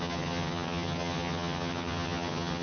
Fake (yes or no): yes